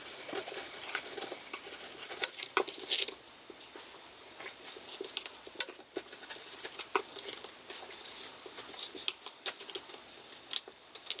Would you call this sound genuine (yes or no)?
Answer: yes